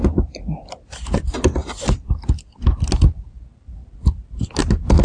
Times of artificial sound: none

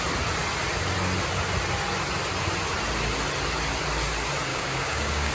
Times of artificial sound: 4.5-5.3

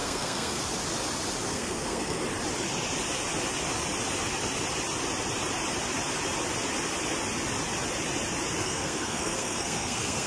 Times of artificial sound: 0.0-0.6; 1.5-2.2; 8.6-10.3

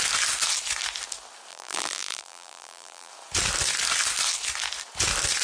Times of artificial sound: 1.5-3.1

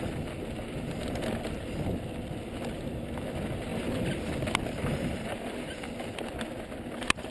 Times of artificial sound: none

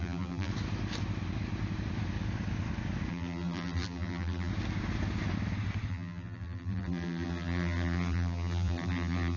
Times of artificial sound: 0.0-0.5; 3.1-4.5; 5.9-9.4

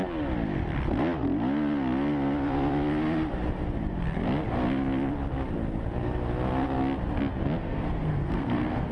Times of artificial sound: 7.6-8.9